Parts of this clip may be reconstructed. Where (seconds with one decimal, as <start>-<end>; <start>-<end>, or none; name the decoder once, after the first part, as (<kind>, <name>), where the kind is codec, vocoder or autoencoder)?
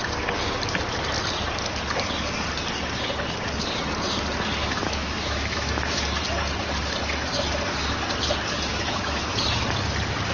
4.6-6.0 (autoencoder, DAC-VAE); 8.7-9.3